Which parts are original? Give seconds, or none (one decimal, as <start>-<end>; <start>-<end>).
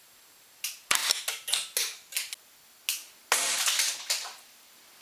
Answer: 0.0-5.0